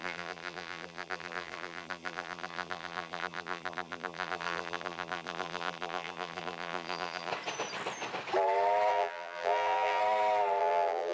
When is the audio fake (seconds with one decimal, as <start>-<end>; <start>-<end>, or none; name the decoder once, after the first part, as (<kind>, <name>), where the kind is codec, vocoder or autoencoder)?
0.0-7.3 (vocoder, BigVGAN v2); 8.9-10.0; 10.6-11.1